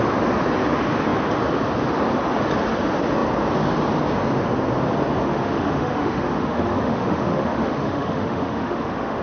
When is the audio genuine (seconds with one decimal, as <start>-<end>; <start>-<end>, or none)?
0.0-5.2